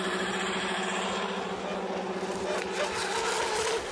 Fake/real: real